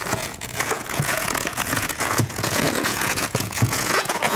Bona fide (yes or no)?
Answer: no